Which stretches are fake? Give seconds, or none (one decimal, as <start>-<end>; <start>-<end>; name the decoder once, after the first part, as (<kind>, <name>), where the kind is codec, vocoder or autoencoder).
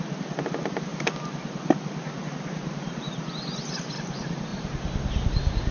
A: none